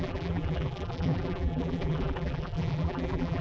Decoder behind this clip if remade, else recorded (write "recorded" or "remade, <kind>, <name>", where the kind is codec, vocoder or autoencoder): remade, vocoder, BigVGAN v2